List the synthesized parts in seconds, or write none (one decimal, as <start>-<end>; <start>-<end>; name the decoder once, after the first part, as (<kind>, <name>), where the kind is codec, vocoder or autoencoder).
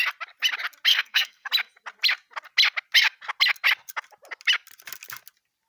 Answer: 0.9-1.5 (codec, SNAC)